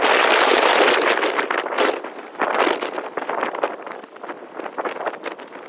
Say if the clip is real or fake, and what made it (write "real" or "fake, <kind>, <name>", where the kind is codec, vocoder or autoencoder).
real